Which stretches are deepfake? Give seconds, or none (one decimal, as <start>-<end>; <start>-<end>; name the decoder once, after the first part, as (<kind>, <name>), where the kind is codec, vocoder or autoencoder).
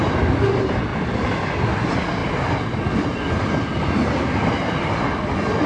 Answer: 0.9-1.6 (vocoder, BigVGAN v2); 2.2-3.3